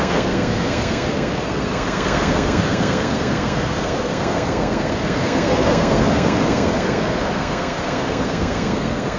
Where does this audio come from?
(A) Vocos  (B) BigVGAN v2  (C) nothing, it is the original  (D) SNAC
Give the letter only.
D